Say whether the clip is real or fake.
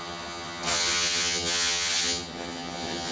fake